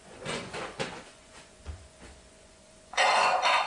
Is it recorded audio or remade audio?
remade